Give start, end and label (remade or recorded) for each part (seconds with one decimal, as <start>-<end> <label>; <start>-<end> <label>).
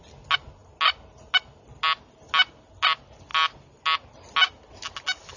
0.0-5.4 recorded